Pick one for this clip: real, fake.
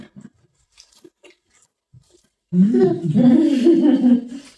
real